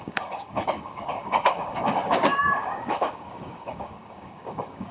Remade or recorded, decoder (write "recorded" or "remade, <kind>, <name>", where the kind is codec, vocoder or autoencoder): remade, codec, DAC